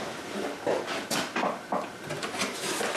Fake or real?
real